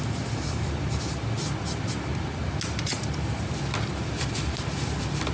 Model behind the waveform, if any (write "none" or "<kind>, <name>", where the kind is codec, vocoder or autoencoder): none